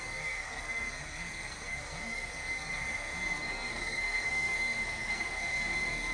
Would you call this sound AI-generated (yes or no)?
yes